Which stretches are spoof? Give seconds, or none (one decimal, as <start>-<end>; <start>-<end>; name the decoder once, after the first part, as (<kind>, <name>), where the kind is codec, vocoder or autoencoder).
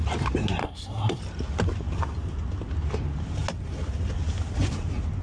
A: 0.6-1.2 (codec, SNAC)